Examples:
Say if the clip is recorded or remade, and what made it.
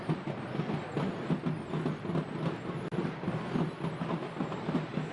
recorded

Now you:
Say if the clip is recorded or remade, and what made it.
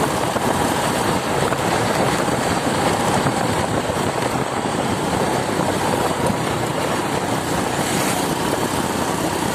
remade, vocoder, BigVGAN v2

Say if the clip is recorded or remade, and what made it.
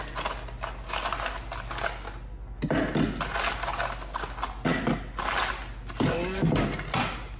recorded